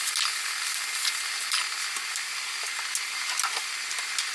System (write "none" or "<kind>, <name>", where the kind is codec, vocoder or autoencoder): none